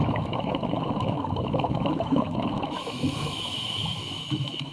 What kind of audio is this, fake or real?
fake